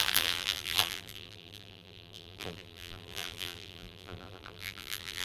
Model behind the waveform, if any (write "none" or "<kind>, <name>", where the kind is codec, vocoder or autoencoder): vocoder, BigVGAN v2